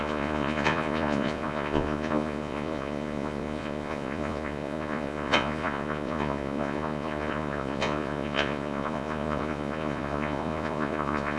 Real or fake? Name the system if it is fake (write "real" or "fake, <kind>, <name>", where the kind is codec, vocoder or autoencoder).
fake, vocoder, Vocos